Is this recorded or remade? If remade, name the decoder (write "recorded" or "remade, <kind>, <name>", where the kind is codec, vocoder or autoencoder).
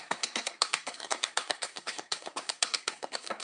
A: remade, codec, SNAC